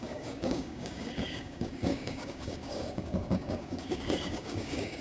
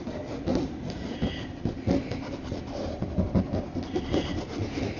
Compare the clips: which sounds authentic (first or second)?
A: second